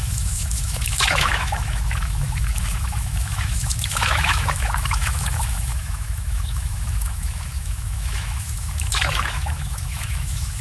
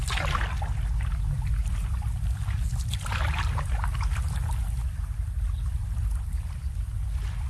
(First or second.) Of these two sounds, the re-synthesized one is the first